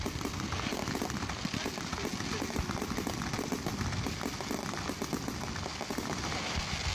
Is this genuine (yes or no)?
yes